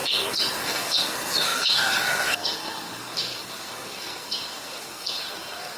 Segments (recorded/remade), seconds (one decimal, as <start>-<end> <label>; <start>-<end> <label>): 0.0-5.8 remade